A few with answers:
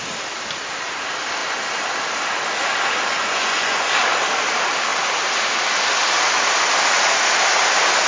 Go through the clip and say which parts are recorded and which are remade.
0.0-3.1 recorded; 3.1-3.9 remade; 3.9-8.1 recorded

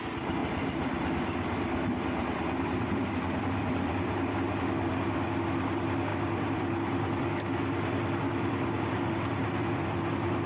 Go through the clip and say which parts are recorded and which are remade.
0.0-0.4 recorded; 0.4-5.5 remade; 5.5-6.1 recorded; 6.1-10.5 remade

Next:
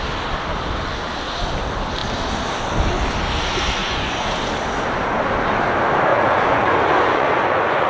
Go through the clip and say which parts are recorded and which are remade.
0.0-3.8 recorded; 3.8-4.3 remade; 4.3-6.1 recorded; 6.1-7.9 remade

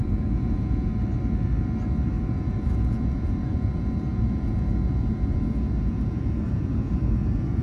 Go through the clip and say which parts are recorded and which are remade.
0.0-0.9 remade; 0.9-2.2 recorded; 2.2-7.6 remade